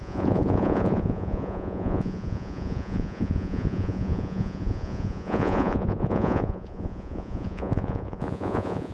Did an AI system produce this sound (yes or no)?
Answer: yes